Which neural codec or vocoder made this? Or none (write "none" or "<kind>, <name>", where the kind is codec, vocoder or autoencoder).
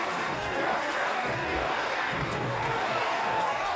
codec, DAC